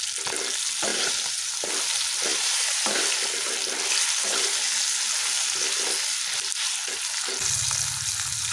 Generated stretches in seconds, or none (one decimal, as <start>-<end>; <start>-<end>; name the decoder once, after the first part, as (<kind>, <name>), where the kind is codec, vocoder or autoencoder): 0.9-1.7 (vocoder, BigVGAN v2); 2.3-3.0